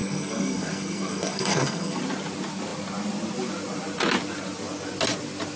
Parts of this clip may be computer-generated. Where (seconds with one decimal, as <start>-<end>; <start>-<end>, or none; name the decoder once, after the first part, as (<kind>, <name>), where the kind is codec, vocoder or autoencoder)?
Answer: 0.0-2.0 (codec, SNAC)